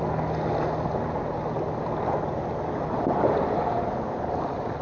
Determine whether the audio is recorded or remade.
recorded